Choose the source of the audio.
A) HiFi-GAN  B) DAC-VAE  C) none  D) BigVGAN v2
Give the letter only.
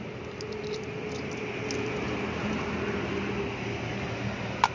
C